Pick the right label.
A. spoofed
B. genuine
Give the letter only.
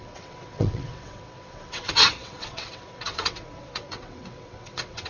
A